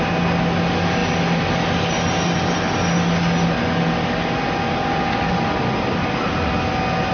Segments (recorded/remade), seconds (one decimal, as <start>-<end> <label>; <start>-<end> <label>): 0.0-7.1 recorded